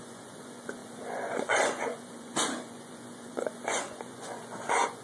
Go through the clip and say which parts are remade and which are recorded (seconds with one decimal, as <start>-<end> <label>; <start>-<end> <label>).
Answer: 0.0-5.0 remade